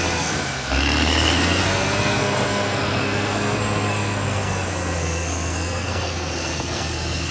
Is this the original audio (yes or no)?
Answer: no